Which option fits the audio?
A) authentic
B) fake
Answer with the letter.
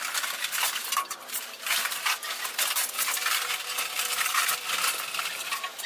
B